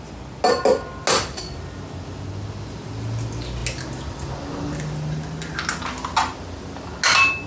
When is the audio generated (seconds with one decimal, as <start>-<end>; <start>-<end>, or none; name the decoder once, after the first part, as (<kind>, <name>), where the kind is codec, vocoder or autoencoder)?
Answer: none